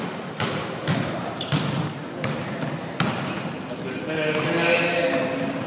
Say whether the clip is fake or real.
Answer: real